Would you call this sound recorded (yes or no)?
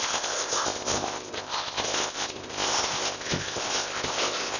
no